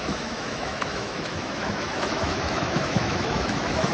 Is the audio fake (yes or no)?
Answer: yes